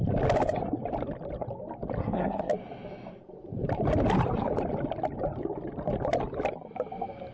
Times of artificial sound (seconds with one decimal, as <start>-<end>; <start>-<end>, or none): 2.0-2.5

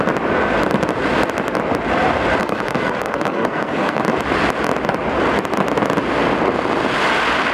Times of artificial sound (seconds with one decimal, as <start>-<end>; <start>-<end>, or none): 2.4-4.0

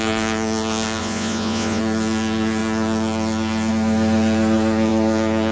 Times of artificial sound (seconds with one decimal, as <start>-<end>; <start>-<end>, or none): 1.0-1.8

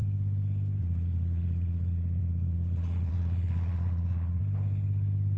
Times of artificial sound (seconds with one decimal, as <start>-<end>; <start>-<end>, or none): 0.8-4.4

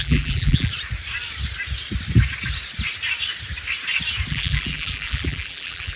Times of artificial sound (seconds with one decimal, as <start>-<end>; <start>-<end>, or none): 0.0-0.7; 4.3-6.0